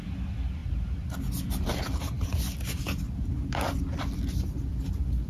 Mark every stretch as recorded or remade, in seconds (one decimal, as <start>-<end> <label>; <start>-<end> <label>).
0.0-5.3 recorded